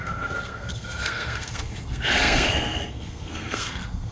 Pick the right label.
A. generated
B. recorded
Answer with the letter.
A